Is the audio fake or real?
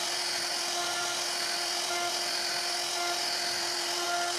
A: real